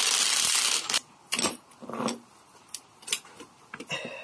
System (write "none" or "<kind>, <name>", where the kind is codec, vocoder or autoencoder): none